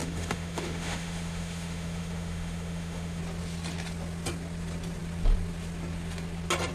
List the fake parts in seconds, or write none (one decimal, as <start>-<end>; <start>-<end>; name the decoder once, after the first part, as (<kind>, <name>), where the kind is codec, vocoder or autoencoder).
0.0-3.2 (autoencoder, DAC-VAE)